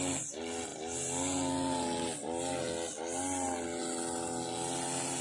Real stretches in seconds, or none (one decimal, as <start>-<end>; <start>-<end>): 0.0-5.2